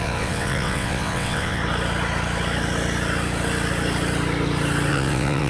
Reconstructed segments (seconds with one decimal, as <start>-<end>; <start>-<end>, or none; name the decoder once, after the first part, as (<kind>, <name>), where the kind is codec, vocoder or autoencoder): 0.0-1.6 (vocoder, WaveNeXt); 4.9-5.5